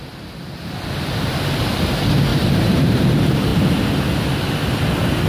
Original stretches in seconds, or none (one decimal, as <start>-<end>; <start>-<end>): 0.0-2.3; 3.0-5.3